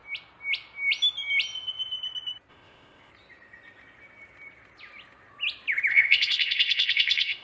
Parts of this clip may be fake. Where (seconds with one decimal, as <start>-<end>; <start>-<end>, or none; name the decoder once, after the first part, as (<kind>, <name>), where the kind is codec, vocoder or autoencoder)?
2.5-3.1 (codec, ZipCodec); 5.9-7.4